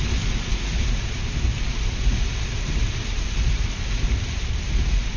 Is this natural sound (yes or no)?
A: yes